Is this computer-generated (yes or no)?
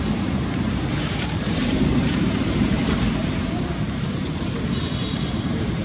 yes